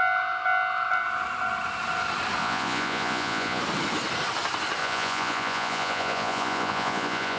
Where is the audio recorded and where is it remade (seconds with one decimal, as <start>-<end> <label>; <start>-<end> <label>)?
0.0-2.4 recorded; 2.4-3.6 remade; 3.6-4.8 recorded; 4.8-7.4 remade